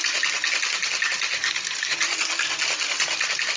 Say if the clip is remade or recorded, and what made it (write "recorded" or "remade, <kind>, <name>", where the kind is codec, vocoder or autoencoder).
recorded